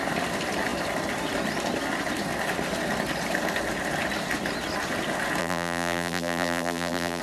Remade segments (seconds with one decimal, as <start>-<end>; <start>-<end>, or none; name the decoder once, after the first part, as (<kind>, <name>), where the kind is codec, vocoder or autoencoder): 5.4-7.2 (vocoder, BigVGAN v2)